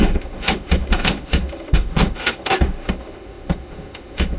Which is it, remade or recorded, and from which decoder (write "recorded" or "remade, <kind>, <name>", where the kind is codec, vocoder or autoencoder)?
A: remade, autoencoder, DAC-VAE